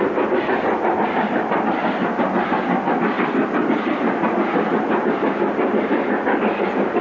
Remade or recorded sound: recorded